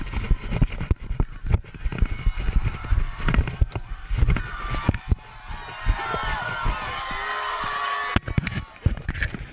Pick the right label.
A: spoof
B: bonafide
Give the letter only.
B